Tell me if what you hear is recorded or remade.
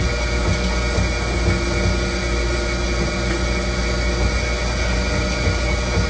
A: recorded